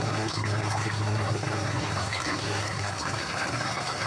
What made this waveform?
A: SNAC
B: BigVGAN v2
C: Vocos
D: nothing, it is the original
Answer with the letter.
A